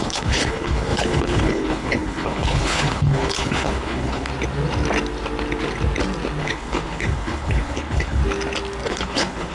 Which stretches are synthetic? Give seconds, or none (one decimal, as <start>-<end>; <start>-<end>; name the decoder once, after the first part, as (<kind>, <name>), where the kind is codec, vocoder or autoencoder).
0.0-4.3 (codec, HILCodec); 6.4-8.2; 8.9-9.5